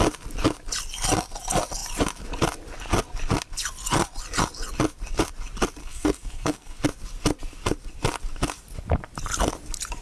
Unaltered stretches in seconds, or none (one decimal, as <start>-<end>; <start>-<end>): 0.0-5.8; 6.8-10.0